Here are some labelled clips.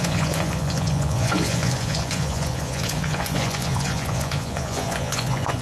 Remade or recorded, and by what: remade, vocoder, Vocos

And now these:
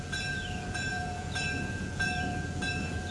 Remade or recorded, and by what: remade, vocoder, Vocos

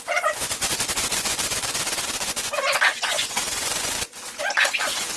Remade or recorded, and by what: remade, vocoder, Vocos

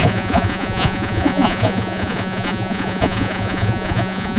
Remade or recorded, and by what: remade, vocoder, Vocos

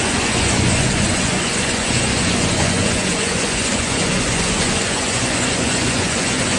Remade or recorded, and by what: remade, vocoder, Vocos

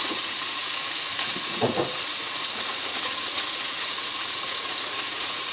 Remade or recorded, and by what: remade, vocoder, Vocos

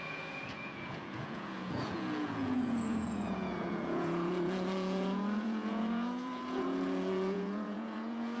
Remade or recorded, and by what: remade, vocoder, Vocos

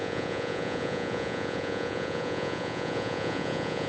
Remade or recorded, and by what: remade, vocoder, Vocos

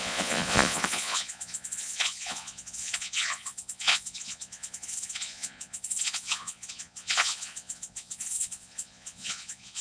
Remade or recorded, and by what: remade, vocoder, Vocos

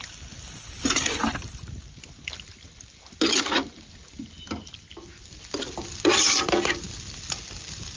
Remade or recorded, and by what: recorded